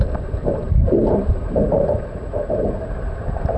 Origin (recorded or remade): remade